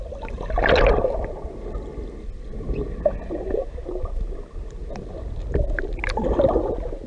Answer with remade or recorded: recorded